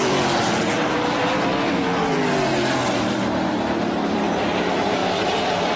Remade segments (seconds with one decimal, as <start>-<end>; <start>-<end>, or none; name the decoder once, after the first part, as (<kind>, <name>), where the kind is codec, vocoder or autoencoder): 2.9-5.8 (vocoder, BigVGAN v2)